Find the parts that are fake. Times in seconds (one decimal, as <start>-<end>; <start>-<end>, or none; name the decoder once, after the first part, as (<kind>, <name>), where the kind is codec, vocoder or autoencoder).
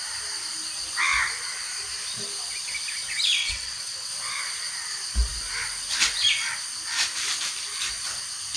3.4-4.1 (vocoder, WaveNeXt)